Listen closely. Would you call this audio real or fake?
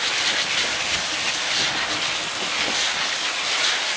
real